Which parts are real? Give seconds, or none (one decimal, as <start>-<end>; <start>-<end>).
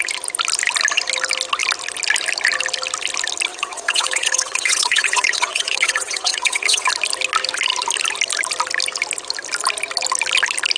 0.0-3.5; 6.9-10.8